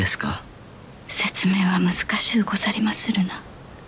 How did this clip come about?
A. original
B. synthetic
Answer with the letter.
A